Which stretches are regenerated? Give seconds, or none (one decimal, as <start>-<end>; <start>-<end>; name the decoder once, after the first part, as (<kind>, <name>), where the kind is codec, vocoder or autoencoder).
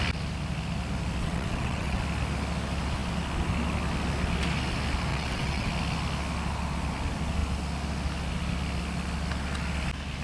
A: 1.2-2.0 (vocoder, WaveNeXt); 5.1-5.7